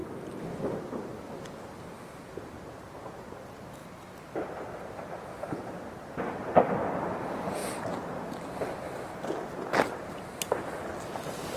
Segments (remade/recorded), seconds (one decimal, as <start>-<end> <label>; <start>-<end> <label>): 0.0-11.6 recorded